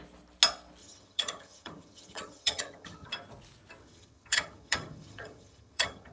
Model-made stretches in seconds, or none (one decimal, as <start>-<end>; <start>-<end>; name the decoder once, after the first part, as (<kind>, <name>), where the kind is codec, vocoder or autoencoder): 0.8-3.1 (vocoder, HiFi-GAN); 3.8-6.1